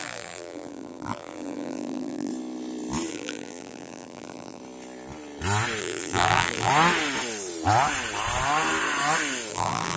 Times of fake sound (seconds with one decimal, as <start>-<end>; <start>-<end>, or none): 0.0-2.3; 3.1-4.6; 5.8-6.7; 9.5-10.0